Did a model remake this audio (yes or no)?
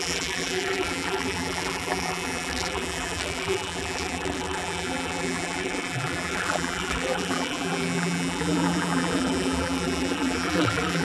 yes